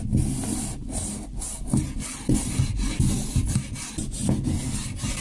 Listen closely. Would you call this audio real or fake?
real